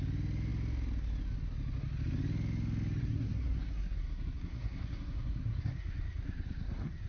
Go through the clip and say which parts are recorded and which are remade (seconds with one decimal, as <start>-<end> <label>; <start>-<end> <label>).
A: 0.0-3.0 recorded; 3.0-7.1 remade